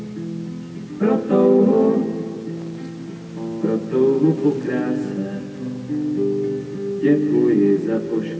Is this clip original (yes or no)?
yes